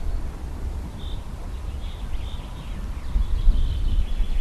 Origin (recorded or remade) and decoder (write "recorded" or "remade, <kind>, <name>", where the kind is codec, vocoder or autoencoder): remade, vocoder, BigVGAN v2